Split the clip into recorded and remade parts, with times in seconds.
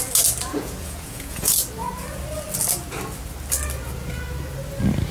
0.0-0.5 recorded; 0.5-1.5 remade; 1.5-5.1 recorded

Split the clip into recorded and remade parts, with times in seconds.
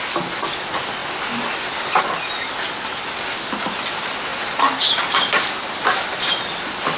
0.0-7.0 recorded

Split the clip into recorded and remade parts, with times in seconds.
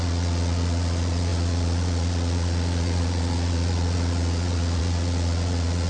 0.0-5.9 remade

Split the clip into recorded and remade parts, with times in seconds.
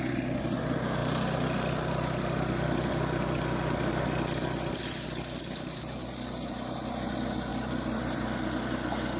0.0-9.2 recorded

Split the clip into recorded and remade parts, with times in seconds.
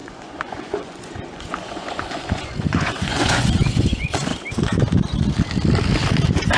0.0-4.3 remade; 4.3-6.6 recorded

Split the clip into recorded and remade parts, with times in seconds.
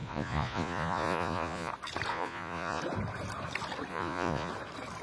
0.0-1.7 remade; 1.7-2.1 recorded; 2.1-2.8 remade; 2.8-3.9 recorded; 3.9-4.5 remade; 4.5-5.0 recorded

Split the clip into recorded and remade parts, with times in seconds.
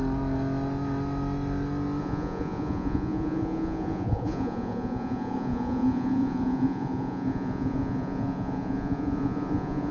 0.0-2.0 recorded; 2.0-9.9 remade